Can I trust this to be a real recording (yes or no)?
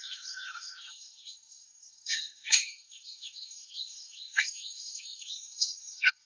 no